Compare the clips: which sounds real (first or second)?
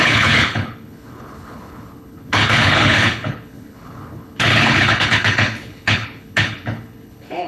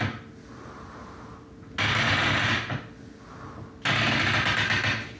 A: second